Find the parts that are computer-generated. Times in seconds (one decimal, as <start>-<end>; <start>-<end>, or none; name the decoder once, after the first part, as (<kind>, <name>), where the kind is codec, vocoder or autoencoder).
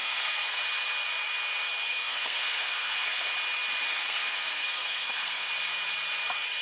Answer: 0.0-0.6 (codec, SNAC); 1.9-3.3; 3.9-5.5